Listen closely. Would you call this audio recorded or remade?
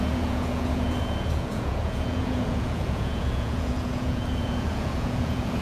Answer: remade